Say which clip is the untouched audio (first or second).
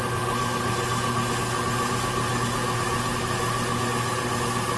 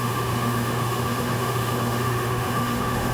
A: first